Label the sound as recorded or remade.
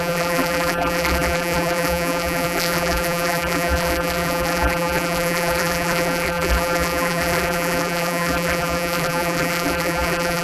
remade